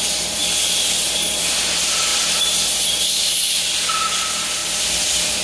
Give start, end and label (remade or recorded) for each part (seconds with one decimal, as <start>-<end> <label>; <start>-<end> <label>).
0.0-5.4 recorded